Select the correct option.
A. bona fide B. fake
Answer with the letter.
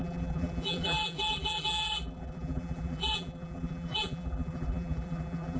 B